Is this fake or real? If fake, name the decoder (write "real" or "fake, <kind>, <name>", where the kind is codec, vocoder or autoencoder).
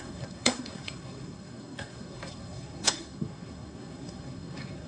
fake, codec, SNAC